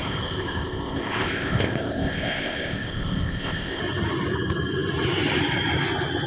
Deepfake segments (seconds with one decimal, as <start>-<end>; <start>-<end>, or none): 0.0-3.8